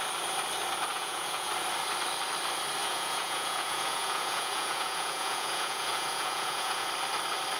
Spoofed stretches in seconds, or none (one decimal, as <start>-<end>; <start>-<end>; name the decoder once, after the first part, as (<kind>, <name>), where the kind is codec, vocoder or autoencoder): 0.9-1.5 (vocoder, Vocos); 2.8-6.9